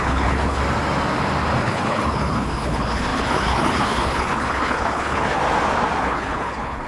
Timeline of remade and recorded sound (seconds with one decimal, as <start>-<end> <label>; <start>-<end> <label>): 0.0-0.6 remade; 0.6-1.6 recorded; 1.6-5.4 remade; 5.4-6.0 recorded; 6.0-6.9 remade